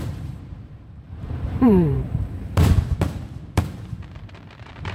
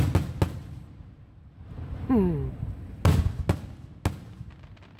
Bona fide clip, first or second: second